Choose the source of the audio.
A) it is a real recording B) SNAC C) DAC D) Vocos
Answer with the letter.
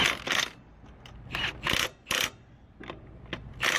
A